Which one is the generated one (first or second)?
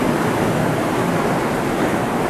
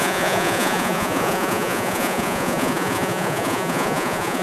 second